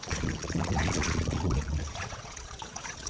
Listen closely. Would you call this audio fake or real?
fake